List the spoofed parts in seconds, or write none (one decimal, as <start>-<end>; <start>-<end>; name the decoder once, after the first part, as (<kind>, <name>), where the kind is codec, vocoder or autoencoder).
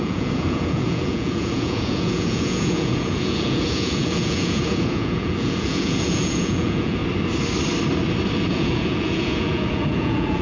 0.0-7.0 (vocoder, Vocos); 8.5-10.4